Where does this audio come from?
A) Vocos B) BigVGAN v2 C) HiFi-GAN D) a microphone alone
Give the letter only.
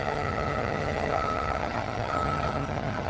C